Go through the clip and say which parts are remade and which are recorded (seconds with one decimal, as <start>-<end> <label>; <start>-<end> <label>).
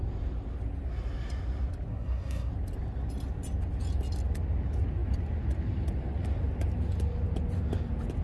0.0-1.9 recorded; 1.9-2.5 remade; 2.5-8.2 recorded